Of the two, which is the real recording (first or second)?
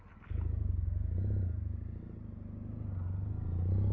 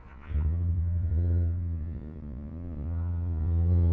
first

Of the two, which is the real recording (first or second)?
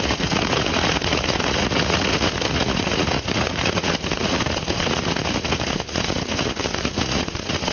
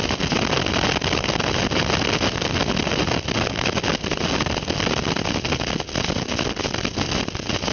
second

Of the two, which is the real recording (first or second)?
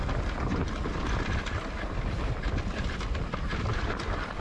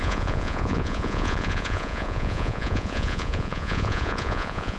first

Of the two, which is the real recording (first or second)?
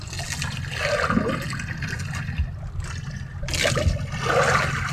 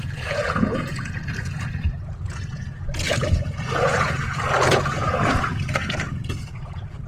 first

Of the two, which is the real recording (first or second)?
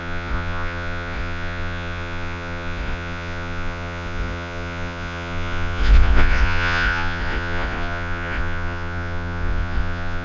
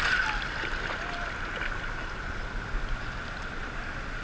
second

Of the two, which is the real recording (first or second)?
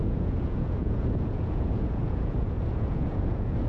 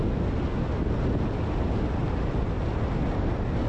second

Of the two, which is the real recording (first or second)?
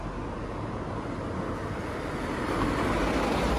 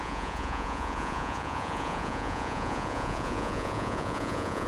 first